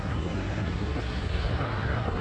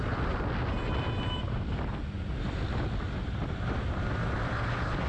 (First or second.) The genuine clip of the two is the second